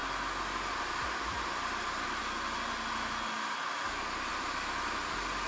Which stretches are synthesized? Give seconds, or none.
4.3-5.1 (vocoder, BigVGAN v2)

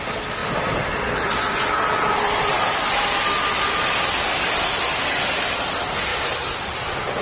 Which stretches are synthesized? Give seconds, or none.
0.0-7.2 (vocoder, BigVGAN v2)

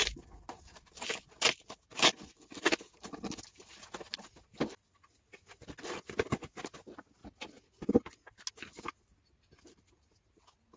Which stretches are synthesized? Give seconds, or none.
none

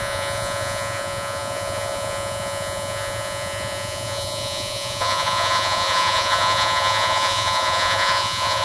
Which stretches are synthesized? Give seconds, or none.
0.0-8.6 (vocoder, Vocos)

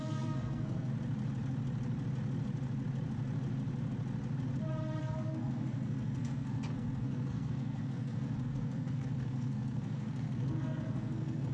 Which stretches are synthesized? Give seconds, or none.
0.0-0.9 (codec, SNAC); 5.0-11.5

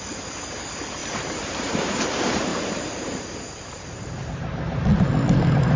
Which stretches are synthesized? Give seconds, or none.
1.0-2.0 (vocoder, BigVGAN v2); 2.5-4.3

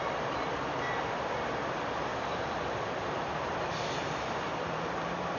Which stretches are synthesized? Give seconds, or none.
0.0-5.4 (vocoder, BigVGAN v2)